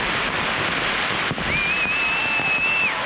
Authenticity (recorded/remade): recorded